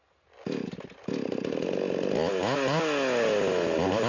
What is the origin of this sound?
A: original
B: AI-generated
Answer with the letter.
A